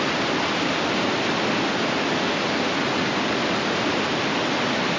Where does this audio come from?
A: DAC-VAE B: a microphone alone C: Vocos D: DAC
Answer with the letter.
B